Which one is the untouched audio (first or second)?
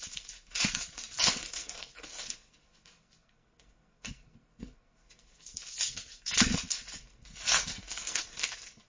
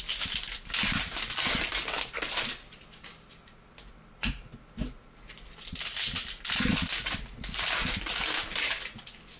second